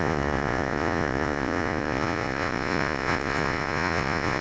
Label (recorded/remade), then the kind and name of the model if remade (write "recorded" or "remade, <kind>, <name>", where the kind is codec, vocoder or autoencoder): remade, vocoder, Vocos